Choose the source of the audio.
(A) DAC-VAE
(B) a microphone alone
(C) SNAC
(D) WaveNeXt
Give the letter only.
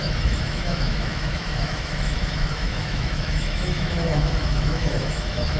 A